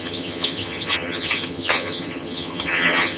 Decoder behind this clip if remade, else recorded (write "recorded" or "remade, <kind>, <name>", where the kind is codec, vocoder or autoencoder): remade, vocoder, HiFi-GAN